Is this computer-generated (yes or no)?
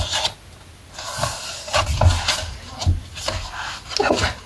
no